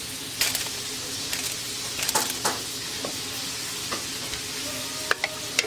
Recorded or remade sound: recorded